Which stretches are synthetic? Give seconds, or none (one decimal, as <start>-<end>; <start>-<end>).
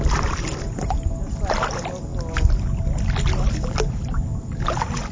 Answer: none